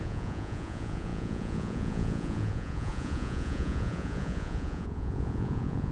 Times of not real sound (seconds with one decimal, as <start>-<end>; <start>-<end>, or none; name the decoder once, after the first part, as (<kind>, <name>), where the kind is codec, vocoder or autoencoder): 0.0-5.9 (vocoder, Vocos)

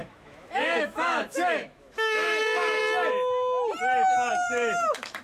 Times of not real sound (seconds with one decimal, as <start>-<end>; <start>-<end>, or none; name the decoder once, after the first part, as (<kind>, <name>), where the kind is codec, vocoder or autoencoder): 0.0-2.8 (autoencoder, DAC-VAE); 4.3-5.2

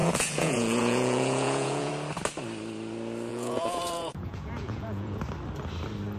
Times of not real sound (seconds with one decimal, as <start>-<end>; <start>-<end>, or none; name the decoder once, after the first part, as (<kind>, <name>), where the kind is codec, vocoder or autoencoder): 0.0-1.9 (vocoder, Vocos); 3.3-5.2

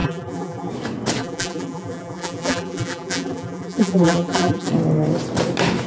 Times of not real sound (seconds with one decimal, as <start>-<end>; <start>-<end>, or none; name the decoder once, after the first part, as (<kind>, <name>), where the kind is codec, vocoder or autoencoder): 0.0-0.7 (vocoder, BigVGAN v2); 1.2-4.7

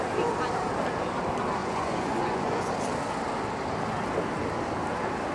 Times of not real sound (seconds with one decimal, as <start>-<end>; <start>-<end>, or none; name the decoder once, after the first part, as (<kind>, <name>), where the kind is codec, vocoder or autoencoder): 1.6-2.7 (vocoder, Vocos)